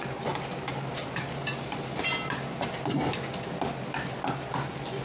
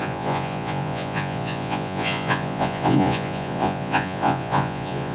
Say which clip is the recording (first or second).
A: first